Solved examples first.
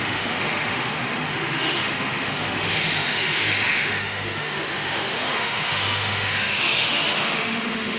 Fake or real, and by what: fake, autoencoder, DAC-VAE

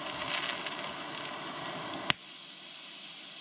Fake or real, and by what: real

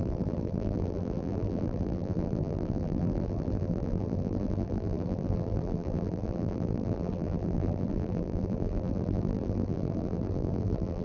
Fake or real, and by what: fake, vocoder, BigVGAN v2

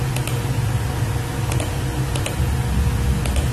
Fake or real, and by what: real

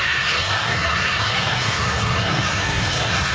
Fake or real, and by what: fake, codec, SNAC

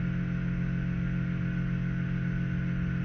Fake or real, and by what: real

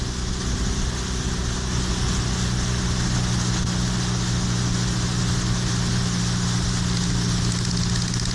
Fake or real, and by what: real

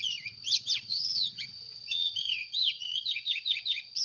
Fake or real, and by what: fake, vocoder, WaveNeXt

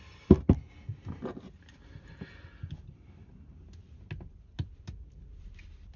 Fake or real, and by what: real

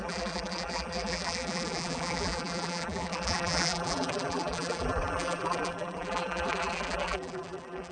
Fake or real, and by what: fake, vocoder, BigVGAN v2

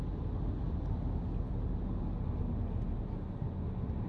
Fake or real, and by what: real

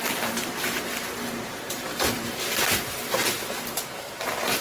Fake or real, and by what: fake, vocoder, BigVGAN v2